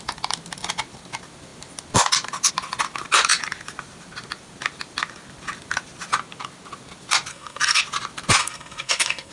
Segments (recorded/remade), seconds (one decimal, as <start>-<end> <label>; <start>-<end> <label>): 0.0-7.3 recorded; 7.3-7.8 remade; 7.8-8.4 recorded; 8.4-9.3 remade